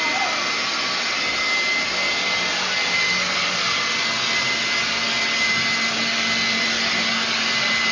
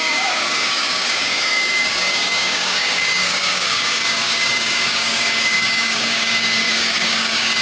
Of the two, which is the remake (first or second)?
second